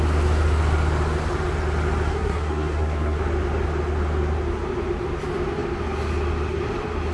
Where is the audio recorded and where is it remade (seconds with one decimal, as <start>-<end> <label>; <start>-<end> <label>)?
0.0-2.1 recorded; 2.1-3.2 remade; 3.2-7.1 recorded